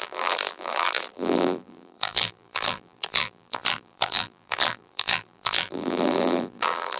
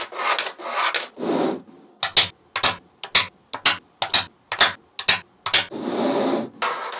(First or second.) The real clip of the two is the second